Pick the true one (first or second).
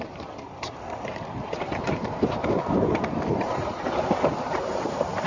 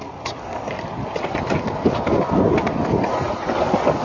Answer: second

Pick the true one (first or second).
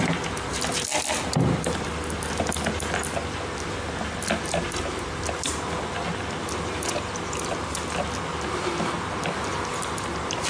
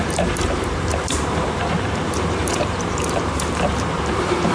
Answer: first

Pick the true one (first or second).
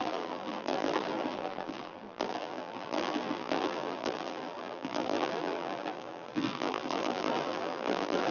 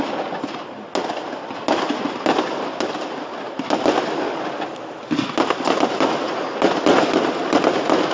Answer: second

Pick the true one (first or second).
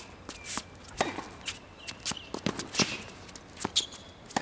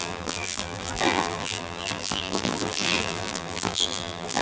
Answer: first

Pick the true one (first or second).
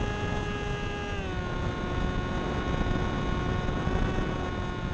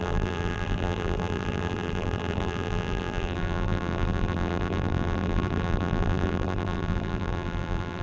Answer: first